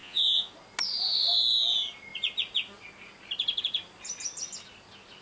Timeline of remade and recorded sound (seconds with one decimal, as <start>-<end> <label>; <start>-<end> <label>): 0.0-0.5 remade; 0.5-5.2 recorded